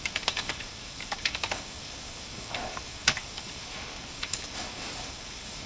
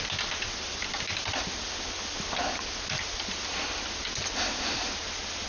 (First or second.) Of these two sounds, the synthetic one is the first